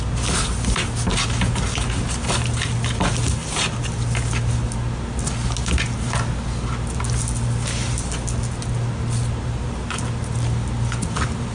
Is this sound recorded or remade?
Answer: recorded